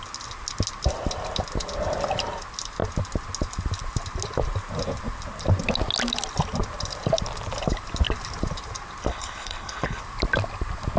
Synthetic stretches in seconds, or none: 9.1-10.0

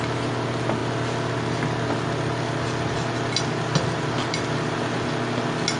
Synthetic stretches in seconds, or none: none

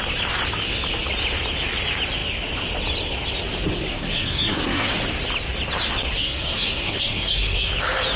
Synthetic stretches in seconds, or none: 3.9-4.9; 6.2-7.7

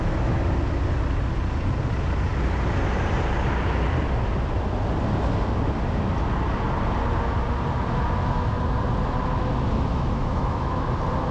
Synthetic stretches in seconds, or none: 9.9-10.9

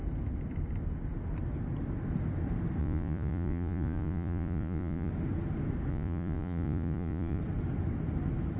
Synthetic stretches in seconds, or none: 2.8-5.1; 5.9-7.4

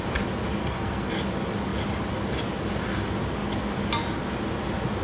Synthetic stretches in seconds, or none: 0.6-1.1

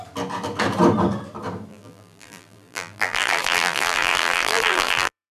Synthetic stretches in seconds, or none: 1.7-5.3